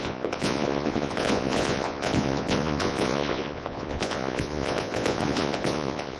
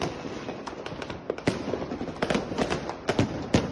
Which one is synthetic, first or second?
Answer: first